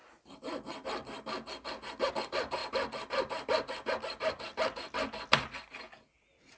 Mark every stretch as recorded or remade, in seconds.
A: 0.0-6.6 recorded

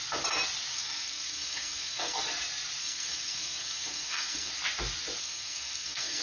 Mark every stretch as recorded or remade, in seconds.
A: 0.0-0.7 recorded; 0.7-2.2 remade; 2.2-2.8 recorded; 2.8-4.5 remade; 4.5-5.2 recorded; 5.2-6.2 remade

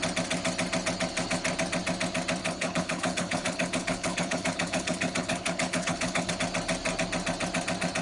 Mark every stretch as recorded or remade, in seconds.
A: 0.0-2.4 recorded; 2.4-6.3 remade; 6.3-8.0 recorded

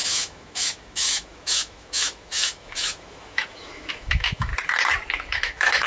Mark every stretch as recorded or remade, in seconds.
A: 0.0-4.5 remade; 4.5-5.1 recorded; 5.1-5.9 remade

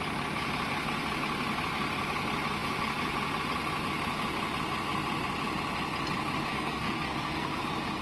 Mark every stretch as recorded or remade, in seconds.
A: 0.0-6.5 recorded; 6.5-7.6 remade; 7.6-8.0 recorded